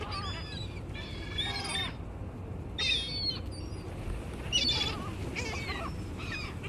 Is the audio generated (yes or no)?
no